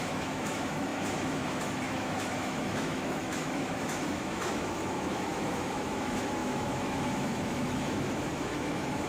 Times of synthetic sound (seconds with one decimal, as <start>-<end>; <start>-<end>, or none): 0.0-9.1